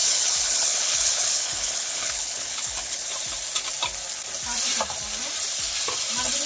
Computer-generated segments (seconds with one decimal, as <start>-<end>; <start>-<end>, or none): 0.0-3.1